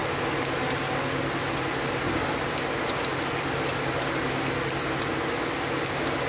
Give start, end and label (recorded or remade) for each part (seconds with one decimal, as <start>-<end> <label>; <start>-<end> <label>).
0.0-6.3 recorded